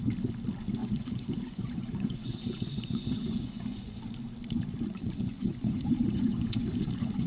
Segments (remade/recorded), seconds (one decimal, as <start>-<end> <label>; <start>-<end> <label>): 0.0-0.8 recorded; 0.8-4.0 remade; 4.0-5.0 recorded; 5.0-7.3 remade